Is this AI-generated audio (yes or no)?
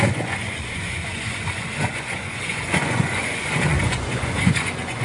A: yes